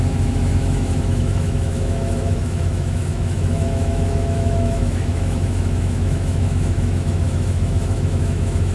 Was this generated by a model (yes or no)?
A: yes